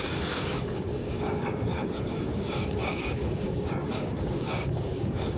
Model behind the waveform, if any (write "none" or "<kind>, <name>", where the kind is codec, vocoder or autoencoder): codec, DAC